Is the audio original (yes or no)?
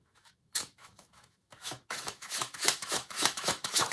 no